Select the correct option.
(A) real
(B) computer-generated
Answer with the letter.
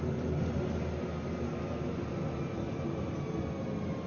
A